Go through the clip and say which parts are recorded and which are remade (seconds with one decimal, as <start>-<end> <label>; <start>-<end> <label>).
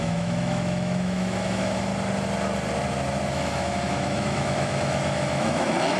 0.0-1.9 remade; 1.9-3.3 recorded; 3.3-6.0 remade